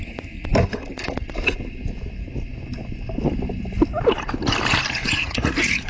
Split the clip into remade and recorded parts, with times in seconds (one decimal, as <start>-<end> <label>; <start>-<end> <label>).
0.0-5.0 recorded; 5.0-5.9 remade